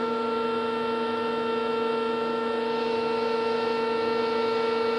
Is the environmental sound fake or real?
real